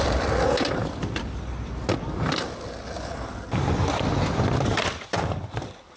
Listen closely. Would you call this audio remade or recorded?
remade